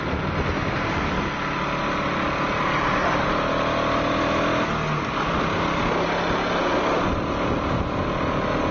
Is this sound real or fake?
real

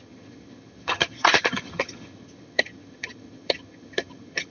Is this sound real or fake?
fake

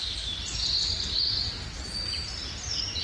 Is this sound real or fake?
real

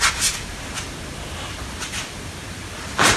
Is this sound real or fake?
real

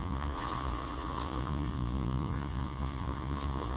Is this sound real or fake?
fake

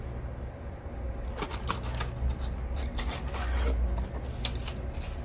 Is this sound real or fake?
real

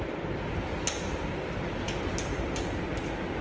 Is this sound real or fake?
real